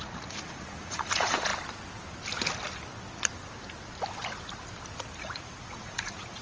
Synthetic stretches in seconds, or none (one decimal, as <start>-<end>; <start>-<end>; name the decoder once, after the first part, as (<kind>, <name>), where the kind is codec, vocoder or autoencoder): 0.0-1.5 (vocoder, Vocos); 5.2-6.4